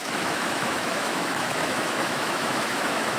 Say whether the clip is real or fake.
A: fake